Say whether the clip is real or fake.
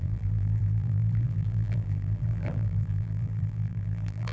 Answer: fake